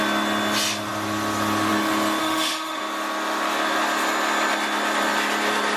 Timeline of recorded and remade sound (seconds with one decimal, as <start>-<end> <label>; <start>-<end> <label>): 0.0-2.2 recorded; 2.2-2.8 remade; 2.8-5.8 recorded